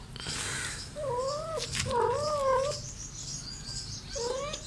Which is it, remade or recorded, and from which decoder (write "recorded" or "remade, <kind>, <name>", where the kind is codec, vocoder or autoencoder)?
recorded